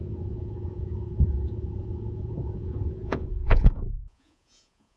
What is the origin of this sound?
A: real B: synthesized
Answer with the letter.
B